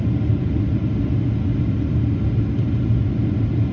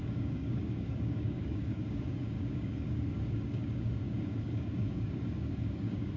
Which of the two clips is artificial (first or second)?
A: second